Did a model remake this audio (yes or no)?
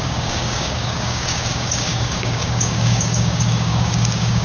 yes